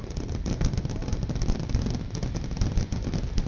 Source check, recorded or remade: recorded